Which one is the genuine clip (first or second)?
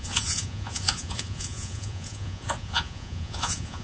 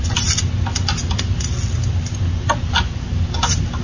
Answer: second